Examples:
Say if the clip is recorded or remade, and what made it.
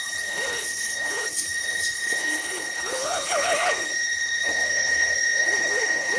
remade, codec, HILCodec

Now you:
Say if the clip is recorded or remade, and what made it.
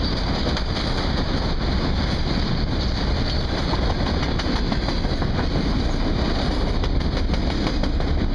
recorded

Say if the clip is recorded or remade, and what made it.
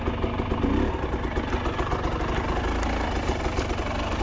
recorded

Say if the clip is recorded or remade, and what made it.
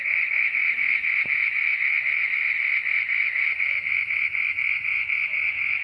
remade, vocoder, Vocos